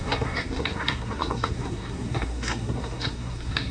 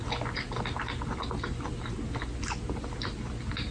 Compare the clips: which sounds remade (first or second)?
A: first